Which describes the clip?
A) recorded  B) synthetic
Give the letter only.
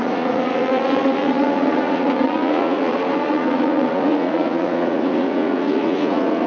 B